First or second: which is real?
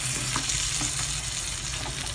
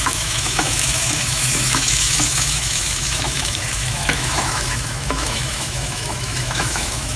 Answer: first